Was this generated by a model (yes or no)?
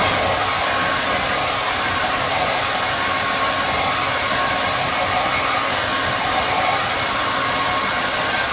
no